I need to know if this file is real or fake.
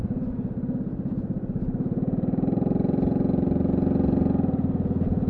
real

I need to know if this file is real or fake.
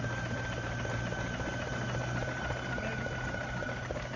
real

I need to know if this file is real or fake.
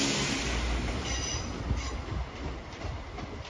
real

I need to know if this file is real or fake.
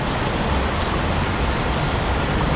real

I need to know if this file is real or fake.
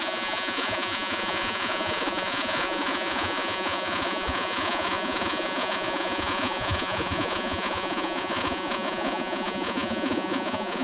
fake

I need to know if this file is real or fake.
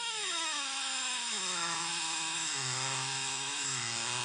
fake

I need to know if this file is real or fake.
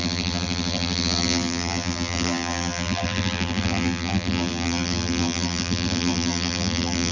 fake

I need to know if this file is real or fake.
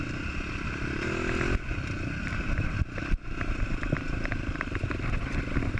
real